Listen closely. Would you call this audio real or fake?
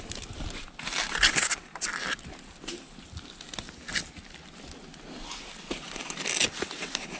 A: real